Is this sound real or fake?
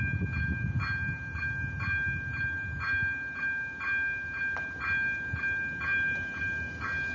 real